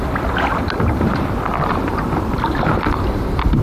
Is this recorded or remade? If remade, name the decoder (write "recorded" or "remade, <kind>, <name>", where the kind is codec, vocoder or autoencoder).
recorded